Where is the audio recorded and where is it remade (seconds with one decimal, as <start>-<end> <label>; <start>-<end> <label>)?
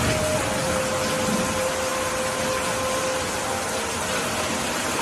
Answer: 0.0-5.0 recorded